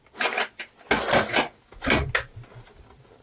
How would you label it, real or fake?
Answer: real